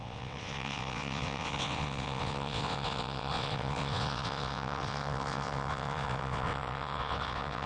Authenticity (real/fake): fake